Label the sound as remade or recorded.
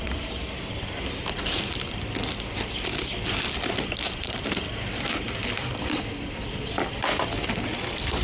recorded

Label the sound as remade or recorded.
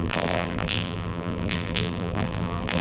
remade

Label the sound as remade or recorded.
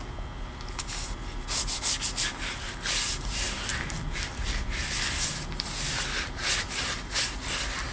remade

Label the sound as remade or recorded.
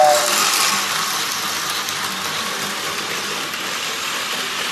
remade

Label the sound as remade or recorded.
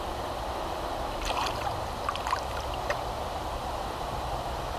remade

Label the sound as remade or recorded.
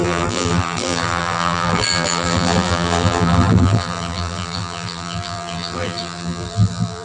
remade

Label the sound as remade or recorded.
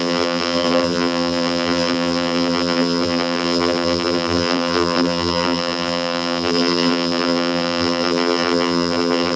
remade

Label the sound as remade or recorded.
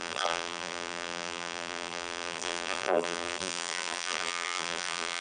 remade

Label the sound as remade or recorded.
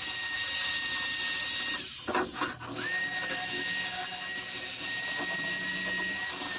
recorded